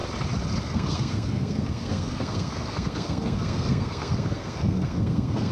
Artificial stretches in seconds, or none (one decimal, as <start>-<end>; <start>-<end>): 0.6-5.5